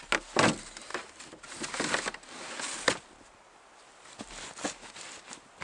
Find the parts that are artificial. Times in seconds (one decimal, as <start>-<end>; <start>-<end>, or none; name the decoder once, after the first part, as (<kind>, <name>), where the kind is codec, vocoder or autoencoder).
none